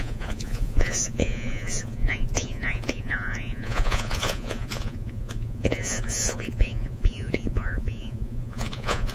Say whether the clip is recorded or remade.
remade